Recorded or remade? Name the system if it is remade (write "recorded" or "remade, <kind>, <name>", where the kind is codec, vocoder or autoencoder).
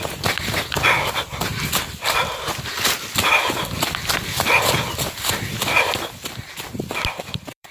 remade, vocoder, BigVGAN v2